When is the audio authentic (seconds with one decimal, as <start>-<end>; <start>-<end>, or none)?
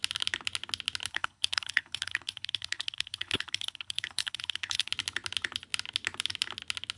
0.0-1.1; 4.9-7.0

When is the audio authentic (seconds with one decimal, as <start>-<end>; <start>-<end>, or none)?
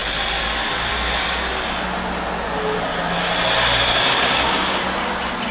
0.0-3.9; 4.8-5.5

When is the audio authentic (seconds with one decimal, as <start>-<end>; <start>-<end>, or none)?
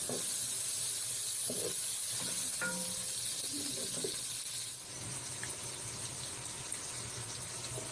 0.0-7.9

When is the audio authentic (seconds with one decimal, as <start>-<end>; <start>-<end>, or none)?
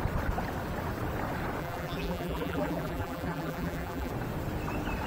0.0-1.6; 4.1-5.1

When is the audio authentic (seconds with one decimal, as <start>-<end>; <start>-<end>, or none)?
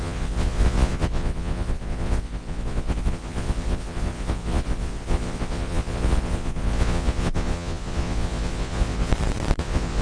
9.1-9.6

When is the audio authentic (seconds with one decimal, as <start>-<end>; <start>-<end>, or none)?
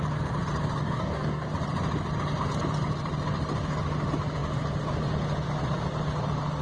0.0-0.8; 1.5-6.6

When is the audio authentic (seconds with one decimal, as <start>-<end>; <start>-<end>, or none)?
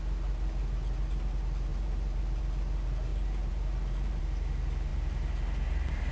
0.0-1.7; 2.4-3.1; 4.2-4.9